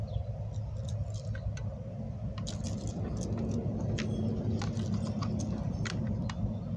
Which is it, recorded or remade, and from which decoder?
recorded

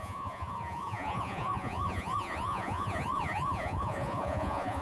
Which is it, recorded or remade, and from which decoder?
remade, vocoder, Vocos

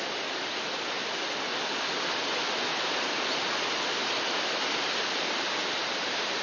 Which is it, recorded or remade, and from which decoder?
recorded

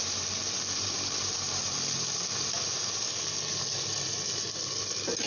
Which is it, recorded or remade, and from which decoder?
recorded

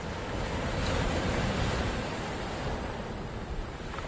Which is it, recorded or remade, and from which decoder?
recorded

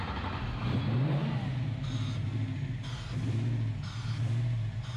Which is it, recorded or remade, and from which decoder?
recorded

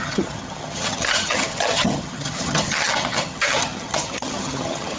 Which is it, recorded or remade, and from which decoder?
remade, vocoder, HiFi-GAN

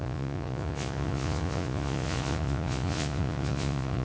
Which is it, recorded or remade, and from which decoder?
remade, vocoder, Vocos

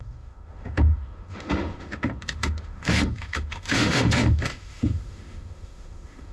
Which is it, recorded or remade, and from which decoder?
remade, autoencoder, DAC-VAE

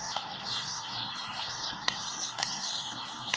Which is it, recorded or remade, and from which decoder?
remade, codec, SNAC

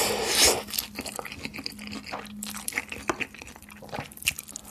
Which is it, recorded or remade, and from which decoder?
recorded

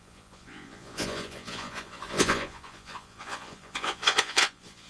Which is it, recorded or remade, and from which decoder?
remade, vocoder, Vocos